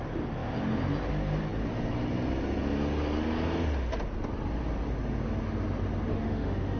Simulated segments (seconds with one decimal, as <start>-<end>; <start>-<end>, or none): 6.1-6.8